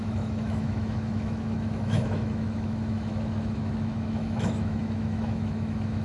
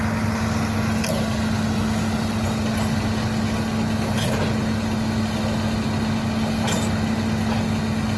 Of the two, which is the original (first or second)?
second